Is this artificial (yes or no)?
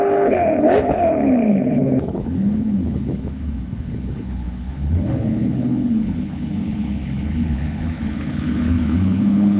yes